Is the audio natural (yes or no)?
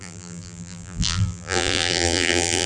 no